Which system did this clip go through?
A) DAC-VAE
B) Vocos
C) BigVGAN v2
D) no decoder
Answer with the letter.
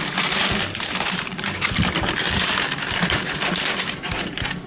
C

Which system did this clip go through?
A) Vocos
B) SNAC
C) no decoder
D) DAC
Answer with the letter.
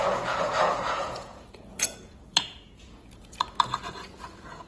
A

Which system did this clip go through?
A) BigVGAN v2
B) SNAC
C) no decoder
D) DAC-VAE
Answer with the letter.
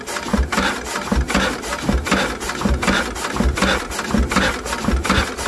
C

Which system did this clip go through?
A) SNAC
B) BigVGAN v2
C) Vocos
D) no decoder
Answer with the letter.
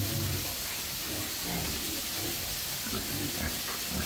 D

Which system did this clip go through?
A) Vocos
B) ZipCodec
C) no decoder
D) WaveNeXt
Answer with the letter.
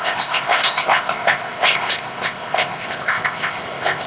B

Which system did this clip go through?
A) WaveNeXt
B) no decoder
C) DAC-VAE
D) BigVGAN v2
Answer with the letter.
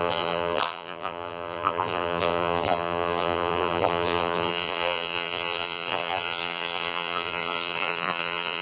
D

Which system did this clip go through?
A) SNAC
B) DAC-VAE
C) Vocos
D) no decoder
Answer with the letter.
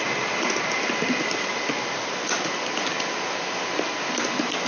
D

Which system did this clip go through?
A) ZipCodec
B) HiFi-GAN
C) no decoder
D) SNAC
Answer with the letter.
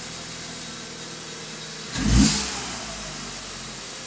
C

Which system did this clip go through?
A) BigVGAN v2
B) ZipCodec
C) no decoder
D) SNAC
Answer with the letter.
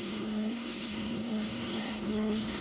D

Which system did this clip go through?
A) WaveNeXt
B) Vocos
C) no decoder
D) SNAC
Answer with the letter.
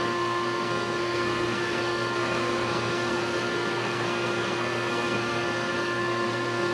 D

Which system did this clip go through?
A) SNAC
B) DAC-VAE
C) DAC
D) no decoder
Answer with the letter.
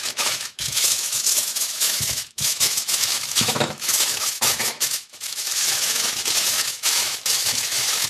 B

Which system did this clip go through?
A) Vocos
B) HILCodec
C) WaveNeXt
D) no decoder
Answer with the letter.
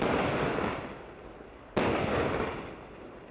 D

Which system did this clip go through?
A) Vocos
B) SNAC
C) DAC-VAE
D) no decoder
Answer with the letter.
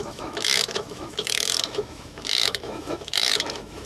C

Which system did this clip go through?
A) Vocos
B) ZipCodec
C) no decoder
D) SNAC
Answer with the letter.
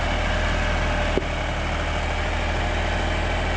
C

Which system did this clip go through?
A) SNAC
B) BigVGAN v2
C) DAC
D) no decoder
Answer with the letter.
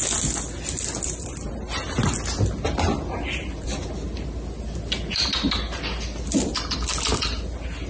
D